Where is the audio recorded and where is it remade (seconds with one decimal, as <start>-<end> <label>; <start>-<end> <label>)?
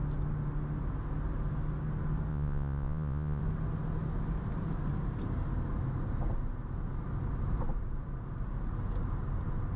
0.0-2.3 recorded; 2.3-3.4 remade; 3.4-9.8 recorded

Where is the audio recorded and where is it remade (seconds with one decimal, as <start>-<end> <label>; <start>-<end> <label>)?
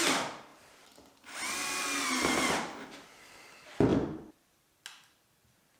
0.0-5.8 recorded